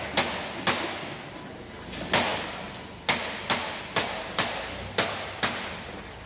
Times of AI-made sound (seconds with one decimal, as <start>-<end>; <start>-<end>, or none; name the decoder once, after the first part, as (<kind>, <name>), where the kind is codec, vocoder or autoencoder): none